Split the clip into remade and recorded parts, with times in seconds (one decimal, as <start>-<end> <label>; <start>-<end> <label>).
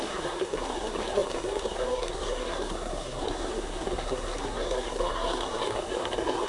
0.0-6.5 remade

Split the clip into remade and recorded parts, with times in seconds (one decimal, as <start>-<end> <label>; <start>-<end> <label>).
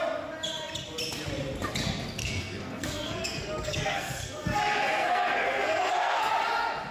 0.0-2.2 recorded; 2.2-6.3 remade; 6.3-6.9 recorded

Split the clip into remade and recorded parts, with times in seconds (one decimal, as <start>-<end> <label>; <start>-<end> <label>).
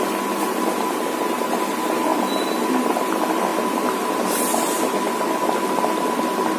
0.0-6.6 recorded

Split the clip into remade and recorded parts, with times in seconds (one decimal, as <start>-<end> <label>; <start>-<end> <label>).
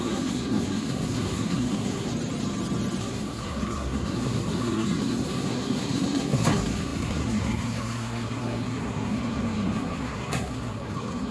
0.0-2.1 remade; 2.1-3.0 recorded; 3.0-11.3 remade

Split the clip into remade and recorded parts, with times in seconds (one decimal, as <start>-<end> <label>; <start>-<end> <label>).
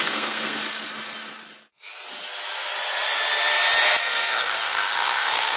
0.0-0.6 remade; 0.6-4.0 recorded; 4.0-5.6 remade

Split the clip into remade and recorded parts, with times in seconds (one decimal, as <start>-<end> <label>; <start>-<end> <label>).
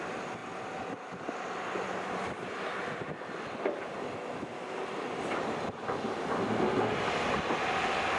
0.0-8.2 recorded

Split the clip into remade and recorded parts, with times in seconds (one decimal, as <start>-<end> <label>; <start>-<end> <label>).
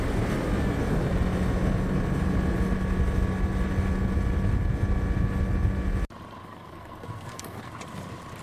0.0-6.4 recorded; 6.4-7.7 remade; 7.7-8.4 recorded